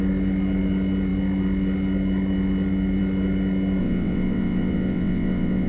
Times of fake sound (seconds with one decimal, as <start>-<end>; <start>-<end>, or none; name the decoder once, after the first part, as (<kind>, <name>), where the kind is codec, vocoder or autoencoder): 3.8-5.7 (vocoder, WaveNeXt)